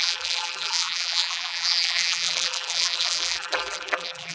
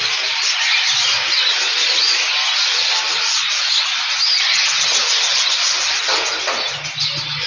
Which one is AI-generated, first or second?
first